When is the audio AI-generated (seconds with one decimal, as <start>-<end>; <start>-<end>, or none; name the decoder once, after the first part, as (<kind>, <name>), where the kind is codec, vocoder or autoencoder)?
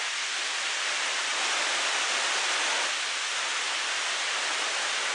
none